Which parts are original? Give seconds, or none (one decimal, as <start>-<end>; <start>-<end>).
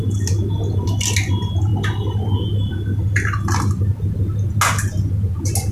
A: 0.0-5.7